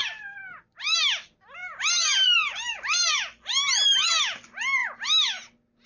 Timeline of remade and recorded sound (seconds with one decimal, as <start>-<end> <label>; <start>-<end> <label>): 0.0-0.6 remade; 0.6-1.6 recorded; 1.6-4.1 remade; 4.1-5.9 recorded